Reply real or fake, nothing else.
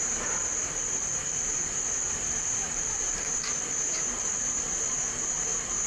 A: fake